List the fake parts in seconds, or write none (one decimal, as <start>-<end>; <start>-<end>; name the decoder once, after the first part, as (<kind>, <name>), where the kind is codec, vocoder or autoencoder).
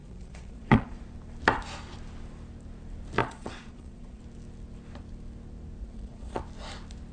0.0-1.0 (vocoder, Vocos); 3.2-4.2; 5.8-6.4